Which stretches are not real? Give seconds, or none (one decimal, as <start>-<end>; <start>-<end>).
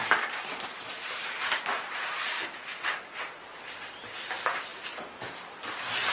0.5-1.6; 4.7-6.1